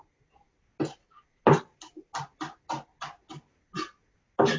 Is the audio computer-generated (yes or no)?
no